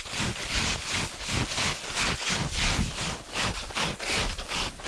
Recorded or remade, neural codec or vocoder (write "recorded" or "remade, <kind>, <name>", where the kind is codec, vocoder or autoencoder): remade, codec, DAC